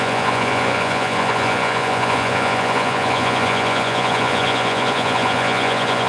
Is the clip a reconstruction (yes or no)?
yes